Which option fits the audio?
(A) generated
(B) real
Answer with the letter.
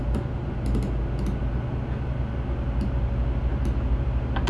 B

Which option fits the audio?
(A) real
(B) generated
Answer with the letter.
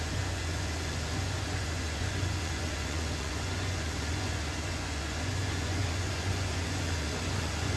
B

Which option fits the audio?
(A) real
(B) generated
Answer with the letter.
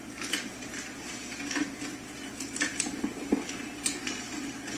A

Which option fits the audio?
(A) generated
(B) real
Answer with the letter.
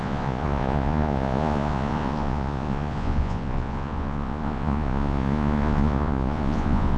A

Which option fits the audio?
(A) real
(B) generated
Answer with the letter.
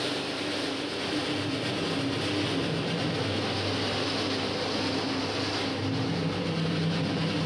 A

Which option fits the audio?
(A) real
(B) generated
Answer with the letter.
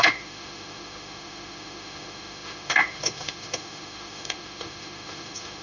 B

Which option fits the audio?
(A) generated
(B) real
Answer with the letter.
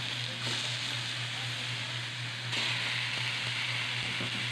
B